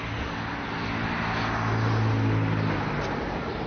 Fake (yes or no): no